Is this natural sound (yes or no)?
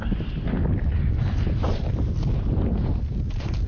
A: yes